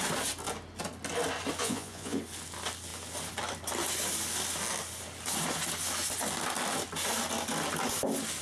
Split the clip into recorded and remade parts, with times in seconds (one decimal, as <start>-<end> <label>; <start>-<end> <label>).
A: 0.0-1.6 recorded; 1.6-2.2 remade; 2.2-8.4 recorded